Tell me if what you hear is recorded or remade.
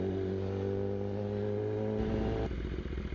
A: recorded